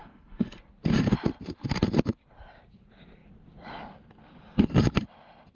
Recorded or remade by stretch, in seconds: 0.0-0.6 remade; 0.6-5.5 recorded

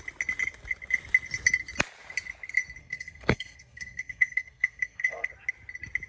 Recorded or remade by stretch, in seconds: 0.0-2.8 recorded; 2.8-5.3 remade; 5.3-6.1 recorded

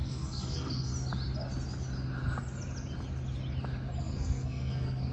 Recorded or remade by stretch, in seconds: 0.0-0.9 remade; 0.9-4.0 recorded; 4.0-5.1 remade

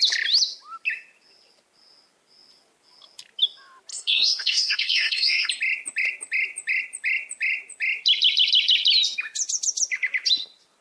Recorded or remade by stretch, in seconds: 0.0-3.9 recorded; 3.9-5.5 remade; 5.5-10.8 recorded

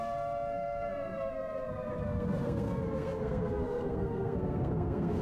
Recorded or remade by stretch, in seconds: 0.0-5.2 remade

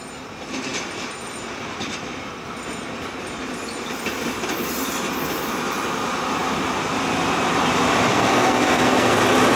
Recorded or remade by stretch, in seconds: 0.0-8.1 recorded; 8.1-9.2 remade; 9.2-9.6 recorded

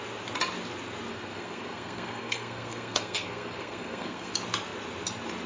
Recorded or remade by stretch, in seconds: 0.0-1.1 recorded; 1.1-4.3 remade; 4.3-5.5 recorded